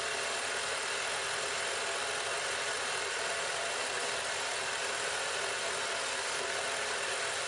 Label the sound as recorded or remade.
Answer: recorded